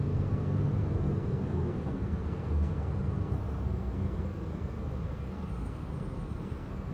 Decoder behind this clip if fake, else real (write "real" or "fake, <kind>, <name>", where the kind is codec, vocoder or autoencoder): fake, codec, SNAC